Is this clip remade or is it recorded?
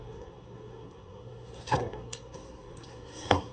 remade